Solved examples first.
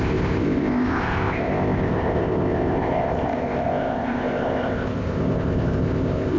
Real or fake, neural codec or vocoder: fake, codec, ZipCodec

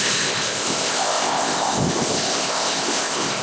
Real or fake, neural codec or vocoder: fake, codec, ZipCodec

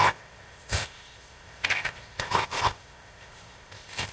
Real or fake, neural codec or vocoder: fake, codec, ZipCodec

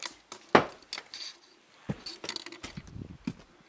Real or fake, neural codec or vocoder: real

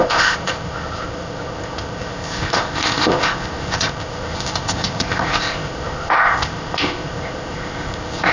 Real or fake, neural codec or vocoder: fake, codec, ZipCodec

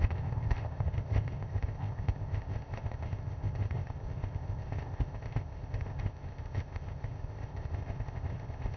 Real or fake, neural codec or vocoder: fake, codec, ZipCodec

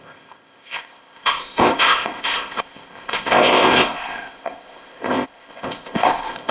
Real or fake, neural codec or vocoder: fake, codec, ZipCodec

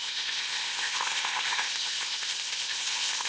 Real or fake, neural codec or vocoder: fake, codec, ZipCodec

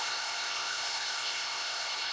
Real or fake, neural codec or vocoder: fake, codec, ZipCodec